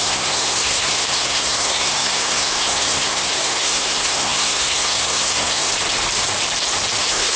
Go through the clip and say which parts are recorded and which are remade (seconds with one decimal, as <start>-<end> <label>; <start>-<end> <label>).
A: 0.0-5.7 remade; 5.7-7.0 recorded; 7.0-7.4 remade